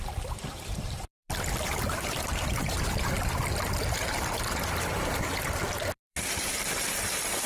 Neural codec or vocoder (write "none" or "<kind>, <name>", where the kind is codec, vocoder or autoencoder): vocoder, BigVGAN v2